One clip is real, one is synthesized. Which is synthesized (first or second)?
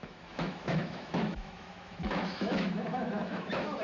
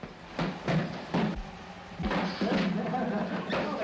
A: first